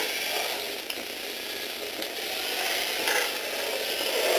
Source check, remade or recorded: recorded